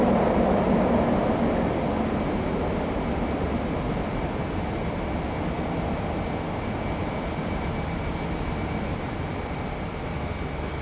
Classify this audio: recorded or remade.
recorded